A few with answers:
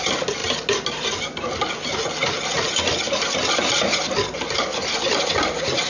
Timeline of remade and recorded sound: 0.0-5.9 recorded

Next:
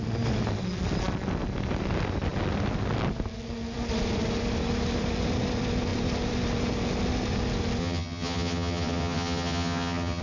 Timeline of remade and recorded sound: 0.0-7.8 recorded; 7.8-10.2 remade

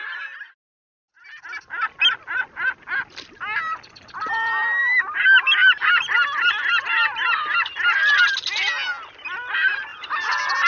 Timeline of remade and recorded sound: 0.0-10.7 recorded

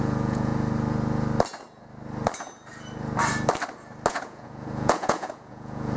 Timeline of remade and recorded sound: 0.0-0.5 remade; 0.5-4.1 recorded; 4.1-6.0 remade

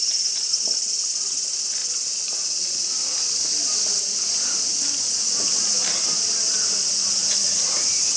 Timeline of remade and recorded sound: 0.0-7.2 recorded; 7.2-8.2 remade

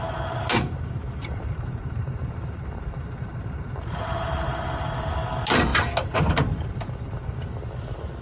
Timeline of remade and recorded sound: 0.0-1.2 recorded; 1.2-4.5 remade; 4.5-8.2 recorded

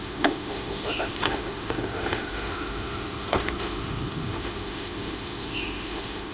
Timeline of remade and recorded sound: 0.0-6.3 remade

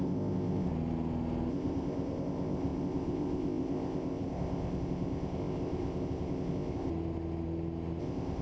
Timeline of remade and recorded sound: 0.0-0.7 remade; 0.7-1.5 recorded; 1.5-6.9 remade; 6.9-8.0 recorded; 8.0-8.4 remade